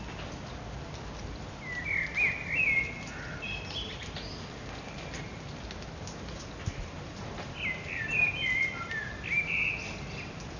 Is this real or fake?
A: real